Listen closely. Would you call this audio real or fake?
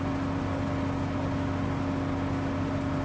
real